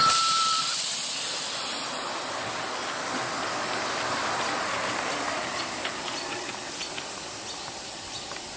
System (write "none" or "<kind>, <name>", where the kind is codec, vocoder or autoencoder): none